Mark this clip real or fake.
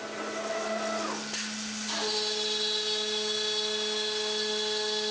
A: real